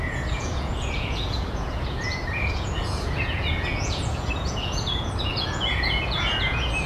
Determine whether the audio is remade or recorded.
remade